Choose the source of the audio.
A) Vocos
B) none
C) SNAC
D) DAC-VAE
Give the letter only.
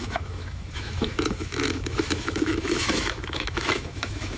D